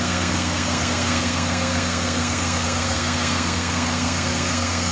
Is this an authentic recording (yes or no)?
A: no